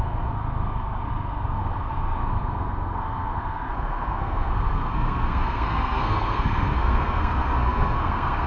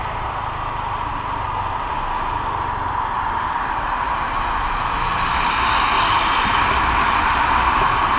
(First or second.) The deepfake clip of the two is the first